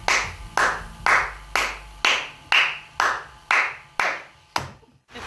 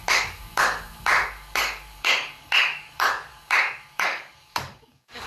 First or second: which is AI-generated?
second